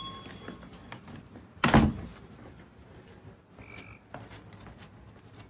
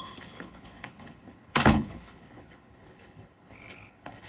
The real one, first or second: first